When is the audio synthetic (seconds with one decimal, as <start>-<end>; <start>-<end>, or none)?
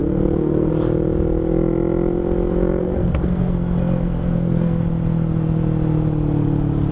0.0-0.7; 2.8-4.8